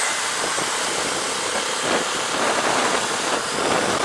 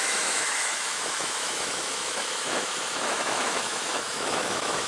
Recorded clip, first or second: first